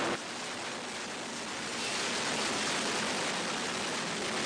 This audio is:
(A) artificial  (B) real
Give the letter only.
B